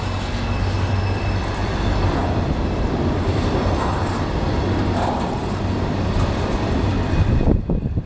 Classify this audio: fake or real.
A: real